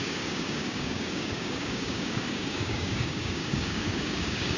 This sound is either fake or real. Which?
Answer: fake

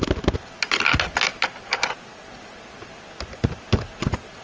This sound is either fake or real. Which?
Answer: real